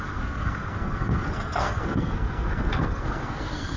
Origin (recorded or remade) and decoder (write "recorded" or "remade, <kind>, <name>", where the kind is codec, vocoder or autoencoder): remade, codec, SNAC